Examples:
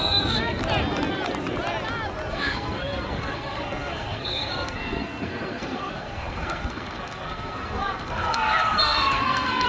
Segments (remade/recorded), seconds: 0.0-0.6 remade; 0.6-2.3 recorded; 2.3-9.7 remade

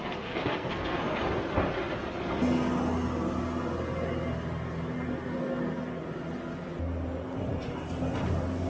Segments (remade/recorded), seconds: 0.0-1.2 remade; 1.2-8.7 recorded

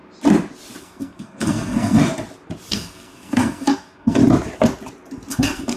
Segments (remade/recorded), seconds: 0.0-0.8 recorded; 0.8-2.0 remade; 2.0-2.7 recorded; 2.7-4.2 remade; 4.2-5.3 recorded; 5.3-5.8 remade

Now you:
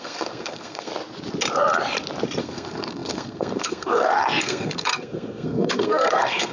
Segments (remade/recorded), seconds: 0.0-0.9 remade; 0.9-2.4 recorded; 2.4-6.5 remade

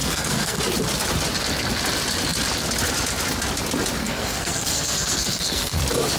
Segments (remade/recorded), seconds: 0.0-0.6 remade; 0.6-4.0 recorded; 4.0-5.8 remade; 5.8-6.2 recorded

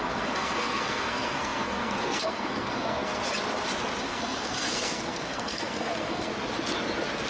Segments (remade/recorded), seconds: 0.0-3.2 remade; 3.2-4.0 recorded; 4.0-6.3 remade; 6.3-7.3 recorded

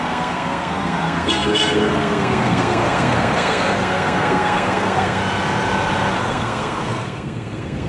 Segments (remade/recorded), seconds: 0.0-5.2 remade; 5.2-6.2 recorded; 6.2-7.9 remade